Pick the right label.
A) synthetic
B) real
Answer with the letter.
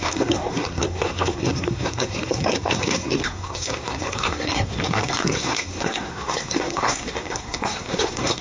A